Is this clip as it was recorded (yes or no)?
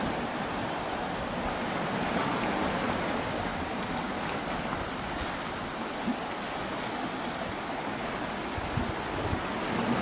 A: yes